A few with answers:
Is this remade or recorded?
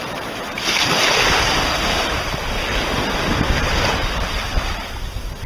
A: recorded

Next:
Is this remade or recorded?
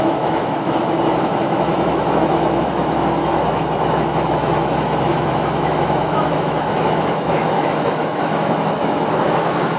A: remade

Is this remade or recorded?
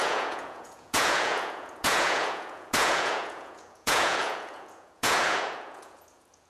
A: remade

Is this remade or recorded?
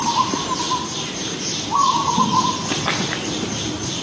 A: recorded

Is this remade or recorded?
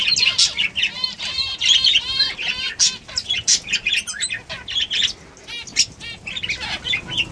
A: recorded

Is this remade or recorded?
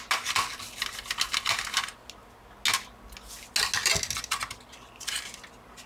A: recorded